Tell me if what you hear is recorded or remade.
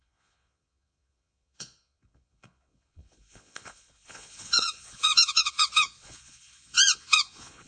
remade